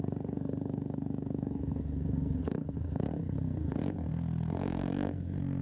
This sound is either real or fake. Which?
fake